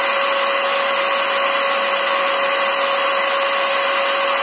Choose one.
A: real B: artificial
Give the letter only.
A